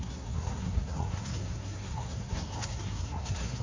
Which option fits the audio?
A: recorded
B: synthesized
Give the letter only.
B